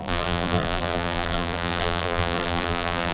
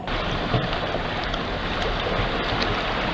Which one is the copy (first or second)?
first